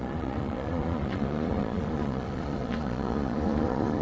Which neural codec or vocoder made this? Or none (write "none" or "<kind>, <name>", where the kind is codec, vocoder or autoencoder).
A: vocoder, Vocos